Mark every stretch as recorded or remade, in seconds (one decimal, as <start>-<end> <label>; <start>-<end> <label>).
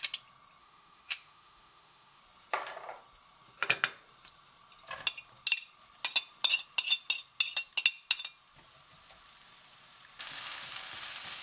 0.0-0.6 recorded; 0.6-2.2 remade; 2.2-11.4 recorded